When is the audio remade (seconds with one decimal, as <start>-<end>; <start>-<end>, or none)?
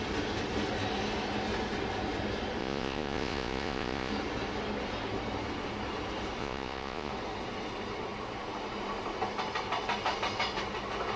2.6-4.1; 6.4-7.1